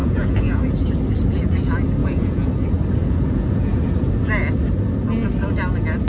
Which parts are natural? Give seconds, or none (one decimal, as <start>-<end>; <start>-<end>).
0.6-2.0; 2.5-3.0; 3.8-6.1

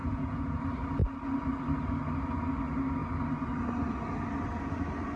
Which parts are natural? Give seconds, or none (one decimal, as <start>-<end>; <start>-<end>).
0.6-5.2

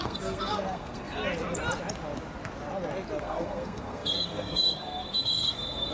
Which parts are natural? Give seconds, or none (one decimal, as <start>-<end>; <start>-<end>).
1.2-3.2

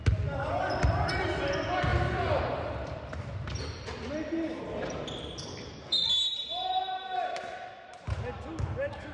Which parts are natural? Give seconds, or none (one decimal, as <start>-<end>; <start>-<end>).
0.0-1.9; 6.1-9.1

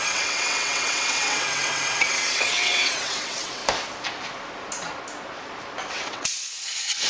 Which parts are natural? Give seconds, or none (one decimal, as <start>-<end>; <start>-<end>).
3.6-5.9

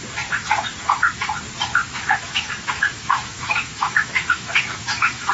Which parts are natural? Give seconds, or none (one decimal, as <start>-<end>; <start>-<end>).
0.0-1.8